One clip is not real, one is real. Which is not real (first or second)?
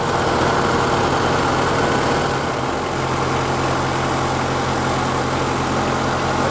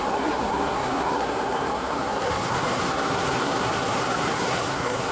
second